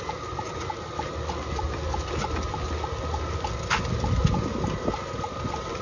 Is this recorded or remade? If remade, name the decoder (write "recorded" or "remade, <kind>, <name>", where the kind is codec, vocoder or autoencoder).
recorded